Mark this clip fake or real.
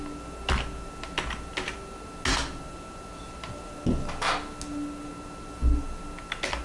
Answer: real